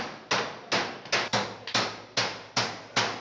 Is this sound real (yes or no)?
yes